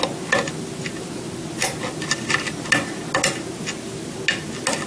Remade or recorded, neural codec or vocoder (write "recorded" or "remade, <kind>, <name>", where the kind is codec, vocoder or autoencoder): recorded